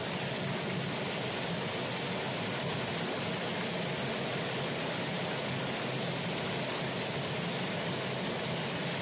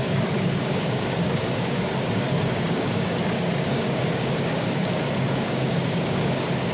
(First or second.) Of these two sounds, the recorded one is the first